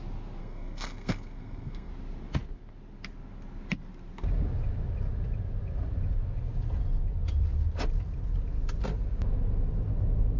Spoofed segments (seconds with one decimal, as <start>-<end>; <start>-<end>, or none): 0.4-1.9